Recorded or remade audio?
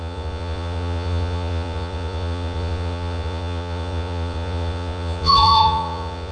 remade